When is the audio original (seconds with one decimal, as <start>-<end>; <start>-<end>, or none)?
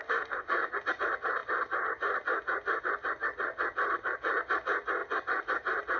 0.7-6.0